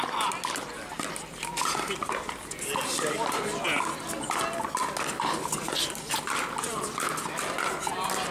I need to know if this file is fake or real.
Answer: real